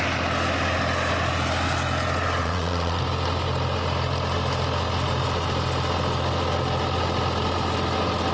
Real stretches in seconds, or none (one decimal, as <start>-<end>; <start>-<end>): 0.0-2.4; 3.0-8.3

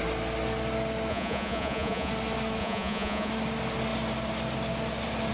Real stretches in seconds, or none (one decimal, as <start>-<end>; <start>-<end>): 0.0-1.1; 2.1-2.6; 3.3-5.3

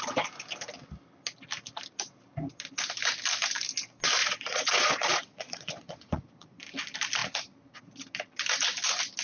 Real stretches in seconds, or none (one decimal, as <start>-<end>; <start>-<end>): 0.0-4.2; 6.6-9.2